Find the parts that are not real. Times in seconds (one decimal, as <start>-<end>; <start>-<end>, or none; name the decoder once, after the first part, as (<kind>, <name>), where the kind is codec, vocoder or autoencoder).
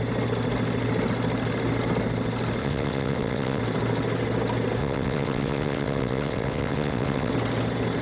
2.6-3.6 (vocoder, WaveNeXt); 4.8-7.3